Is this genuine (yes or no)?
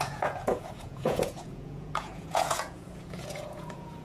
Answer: no